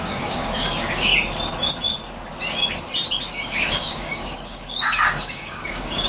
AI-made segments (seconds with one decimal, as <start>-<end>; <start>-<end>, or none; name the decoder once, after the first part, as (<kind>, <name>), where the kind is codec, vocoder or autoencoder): 0.0-1.1 (codec, DAC); 3.3-6.1